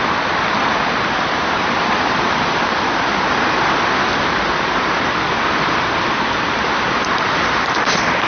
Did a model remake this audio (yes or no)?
yes